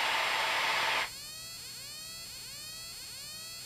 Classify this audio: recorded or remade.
recorded